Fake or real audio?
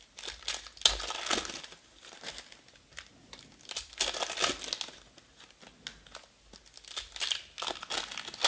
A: real